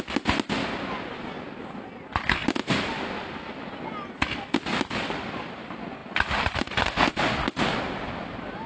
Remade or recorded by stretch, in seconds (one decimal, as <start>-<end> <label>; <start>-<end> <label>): 0.0-8.7 recorded